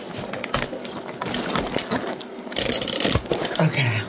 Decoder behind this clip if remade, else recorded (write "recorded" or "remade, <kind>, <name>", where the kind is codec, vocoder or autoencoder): recorded